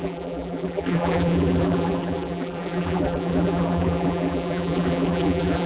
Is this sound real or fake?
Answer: fake